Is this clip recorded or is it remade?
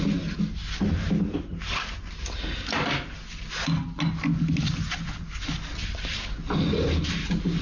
recorded